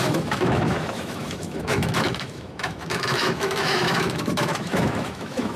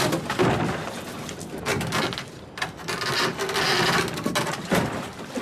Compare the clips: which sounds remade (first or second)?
first